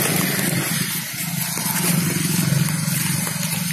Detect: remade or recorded recorded